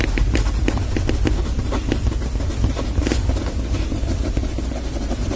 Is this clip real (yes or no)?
yes